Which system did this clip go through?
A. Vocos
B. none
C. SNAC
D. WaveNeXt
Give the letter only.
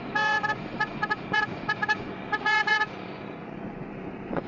A